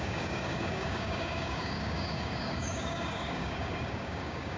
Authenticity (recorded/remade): remade